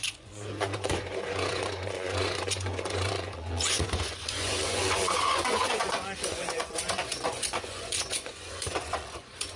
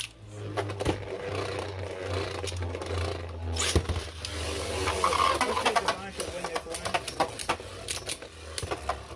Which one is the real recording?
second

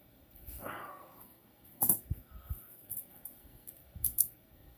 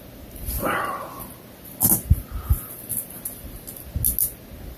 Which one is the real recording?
second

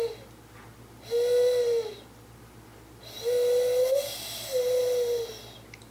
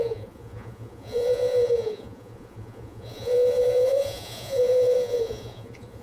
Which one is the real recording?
first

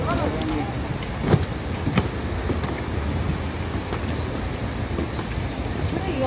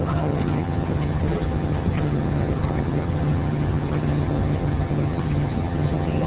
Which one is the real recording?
first